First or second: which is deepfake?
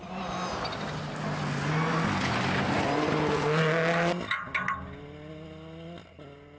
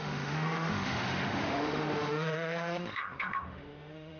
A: second